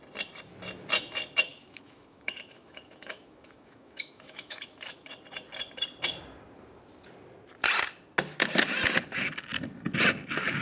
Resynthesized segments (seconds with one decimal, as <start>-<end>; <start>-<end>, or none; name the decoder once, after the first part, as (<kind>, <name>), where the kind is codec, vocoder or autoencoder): 1.5-5.1 (autoencoder, DAC-VAE)